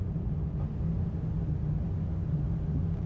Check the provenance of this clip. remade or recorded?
recorded